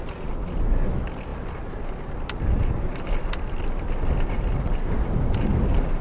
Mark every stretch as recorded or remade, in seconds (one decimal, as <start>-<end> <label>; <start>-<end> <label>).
0.0-6.0 recorded